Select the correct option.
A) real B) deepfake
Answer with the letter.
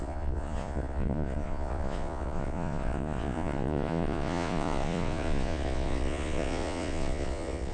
B